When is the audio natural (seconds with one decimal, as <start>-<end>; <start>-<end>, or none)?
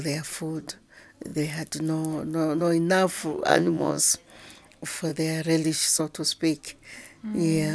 0.0-3.5; 4.0-7.7